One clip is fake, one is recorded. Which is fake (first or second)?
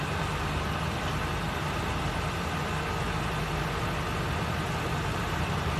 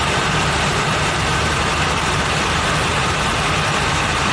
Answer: second